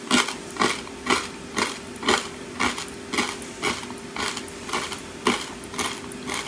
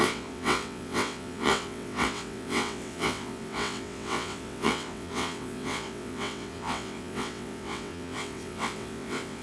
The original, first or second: first